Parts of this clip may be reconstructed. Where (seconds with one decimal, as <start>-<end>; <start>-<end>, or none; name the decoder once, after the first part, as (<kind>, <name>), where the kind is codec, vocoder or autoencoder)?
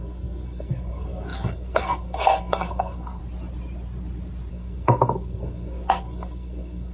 0.0-3.2 (codec, SNAC); 4.5-6.9